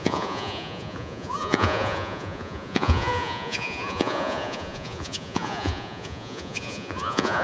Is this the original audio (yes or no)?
no